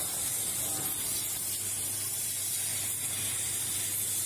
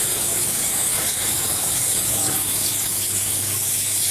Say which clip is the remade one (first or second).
second